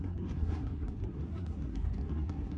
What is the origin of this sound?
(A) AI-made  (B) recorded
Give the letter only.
A